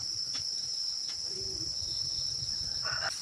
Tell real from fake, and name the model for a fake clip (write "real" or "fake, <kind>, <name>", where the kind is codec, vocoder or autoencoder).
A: fake, vocoder, BigVGAN v2